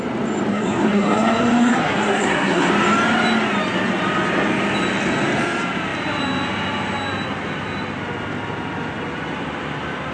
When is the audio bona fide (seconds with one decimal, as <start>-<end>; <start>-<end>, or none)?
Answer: 0.0-0.5; 2.7-10.1